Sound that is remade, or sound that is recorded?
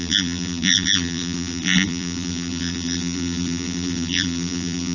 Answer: remade